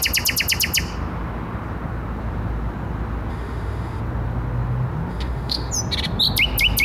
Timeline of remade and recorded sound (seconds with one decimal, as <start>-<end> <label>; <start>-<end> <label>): 0.0-3.3 recorded; 3.3-4.0 remade; 4.0-5.1 recorded; 5.1-5.7 remade; 5.7-6.8 recorded